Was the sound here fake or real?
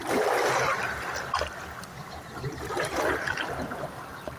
real